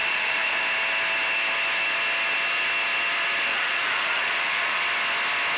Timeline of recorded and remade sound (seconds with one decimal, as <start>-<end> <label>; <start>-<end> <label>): 0.0-0.6 remade; 0.6-3.5 recorded; 3.5-4.8 remade; 4.8-5.6 recorded